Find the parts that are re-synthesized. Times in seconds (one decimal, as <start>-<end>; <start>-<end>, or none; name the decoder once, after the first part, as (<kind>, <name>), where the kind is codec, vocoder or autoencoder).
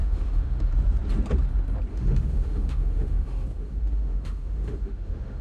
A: 0.0-0.7 (autoencoder, DAC-VAE); 1.9-5.4